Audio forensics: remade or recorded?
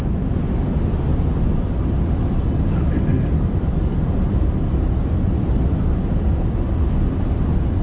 recorded